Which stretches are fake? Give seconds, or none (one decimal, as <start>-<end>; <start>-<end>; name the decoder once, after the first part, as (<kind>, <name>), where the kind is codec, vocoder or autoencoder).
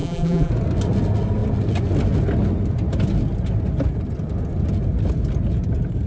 0.0-0.5 (vocoder, BigVGAN v2)